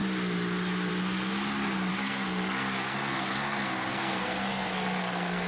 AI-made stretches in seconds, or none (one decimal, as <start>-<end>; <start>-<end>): 1.9-5.5